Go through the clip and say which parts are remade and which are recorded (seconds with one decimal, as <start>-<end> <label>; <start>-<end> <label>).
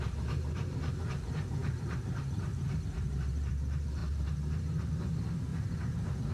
0.0-6.3 remade